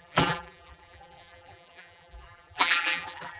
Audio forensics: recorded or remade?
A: remade